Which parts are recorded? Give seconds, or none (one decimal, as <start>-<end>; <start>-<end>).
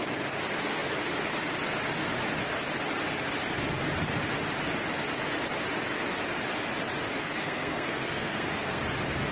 0.0-7.2; 8.8-9.3